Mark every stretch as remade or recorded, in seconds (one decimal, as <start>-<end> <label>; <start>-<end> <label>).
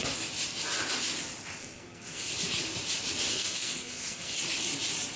0.0-1.6 recorded; 1.6-2.3 remade; 2.3-3.3 recorded; 3.3-4.4 remade; 4.4-5.2 recorded